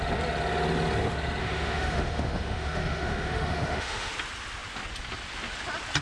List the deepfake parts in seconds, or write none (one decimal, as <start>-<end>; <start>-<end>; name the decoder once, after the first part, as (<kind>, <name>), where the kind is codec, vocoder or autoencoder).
1.4-4.1 (autoencoder, DAC-VAE)